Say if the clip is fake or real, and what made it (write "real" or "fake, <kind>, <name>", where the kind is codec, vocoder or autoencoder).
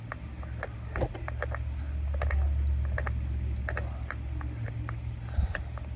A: real